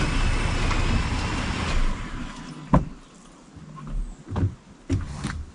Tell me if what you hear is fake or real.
real